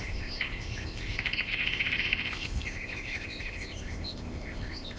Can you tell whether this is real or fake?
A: fake